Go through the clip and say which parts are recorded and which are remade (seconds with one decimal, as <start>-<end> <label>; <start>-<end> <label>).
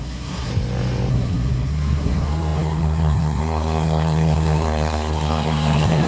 0.0-0.5 remade; 0.5-1.1 recorded; 1.1-6.1 remade